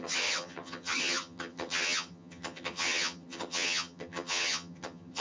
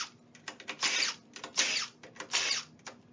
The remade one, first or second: first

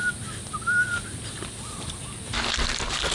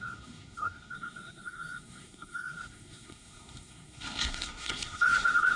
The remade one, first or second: second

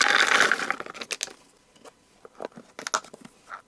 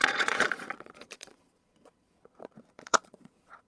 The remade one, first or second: second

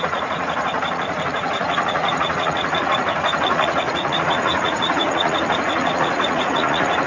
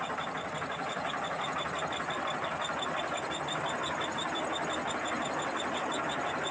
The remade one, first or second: first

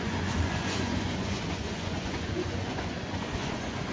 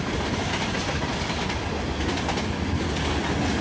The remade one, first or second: first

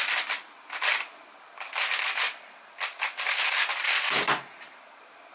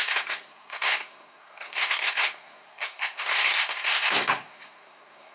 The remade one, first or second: second